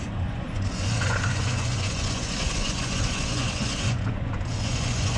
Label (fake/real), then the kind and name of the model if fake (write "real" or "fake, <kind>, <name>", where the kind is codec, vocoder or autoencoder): fake, vocoder, Vocos